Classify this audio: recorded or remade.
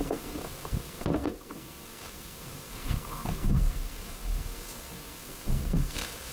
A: remade